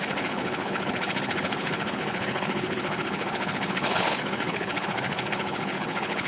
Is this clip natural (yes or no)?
no